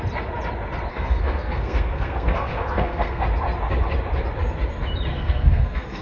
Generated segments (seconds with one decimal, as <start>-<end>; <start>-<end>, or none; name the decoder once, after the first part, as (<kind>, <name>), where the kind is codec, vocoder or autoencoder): 0.9-3.2 (codec, SNAC); 5.1-6.0